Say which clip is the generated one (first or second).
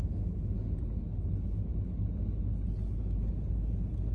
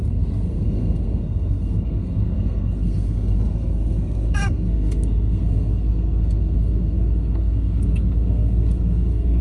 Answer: second